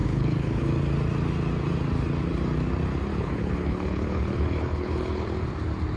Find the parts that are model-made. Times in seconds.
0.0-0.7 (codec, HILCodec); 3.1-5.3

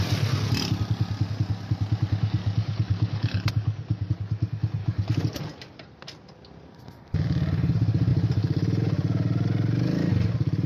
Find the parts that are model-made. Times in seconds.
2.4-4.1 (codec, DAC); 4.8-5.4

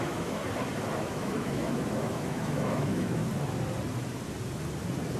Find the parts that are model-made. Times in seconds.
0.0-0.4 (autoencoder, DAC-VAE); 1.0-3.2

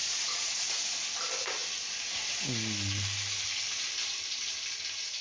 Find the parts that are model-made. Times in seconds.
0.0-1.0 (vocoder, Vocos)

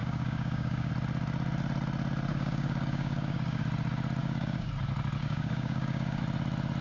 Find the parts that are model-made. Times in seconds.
0.0-0.9 (codec, DAC); 2.3-3.6; 4.2-4.7; 5.2-6.2

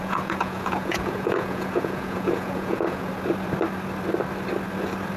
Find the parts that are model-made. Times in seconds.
0.0-3.1 (vocoder, Vocos)